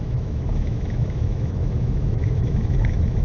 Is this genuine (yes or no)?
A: no